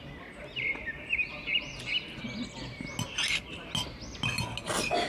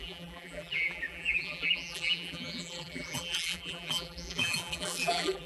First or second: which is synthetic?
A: second